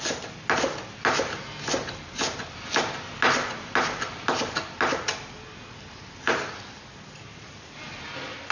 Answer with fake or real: real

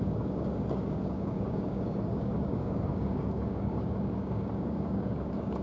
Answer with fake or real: fake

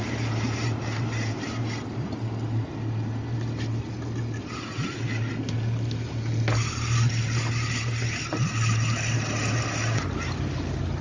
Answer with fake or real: real